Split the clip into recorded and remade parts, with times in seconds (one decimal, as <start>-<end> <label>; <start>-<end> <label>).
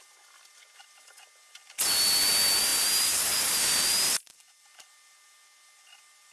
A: 0.0-6.3 recorded